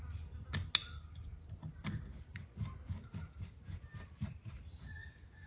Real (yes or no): yes